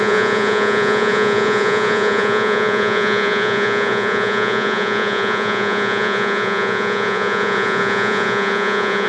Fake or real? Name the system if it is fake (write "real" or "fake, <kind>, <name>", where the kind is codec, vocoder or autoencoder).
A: fake, vocoder, Vocos